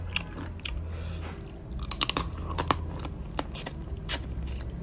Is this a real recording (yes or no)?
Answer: yes